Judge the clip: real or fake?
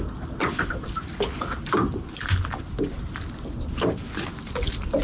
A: real